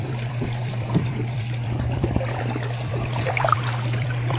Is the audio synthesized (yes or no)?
yes